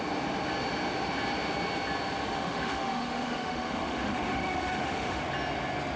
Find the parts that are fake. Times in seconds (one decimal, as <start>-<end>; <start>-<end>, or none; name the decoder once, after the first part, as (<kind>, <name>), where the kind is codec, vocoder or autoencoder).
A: 2.3-5.2 (autoencoder, DAC-VAE)

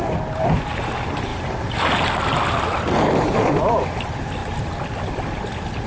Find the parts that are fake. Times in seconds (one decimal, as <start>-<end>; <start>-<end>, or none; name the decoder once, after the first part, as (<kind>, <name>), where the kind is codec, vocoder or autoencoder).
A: none